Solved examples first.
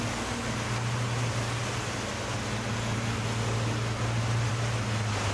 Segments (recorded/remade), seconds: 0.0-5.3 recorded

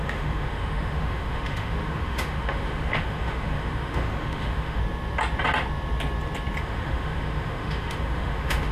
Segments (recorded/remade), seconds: 0.0-4.8 remade; 4.8-6.6 recorded; 6.6-8.7 remade